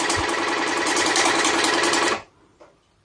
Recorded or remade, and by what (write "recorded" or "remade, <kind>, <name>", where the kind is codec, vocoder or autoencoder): remade, vocoder, BigVGAN v2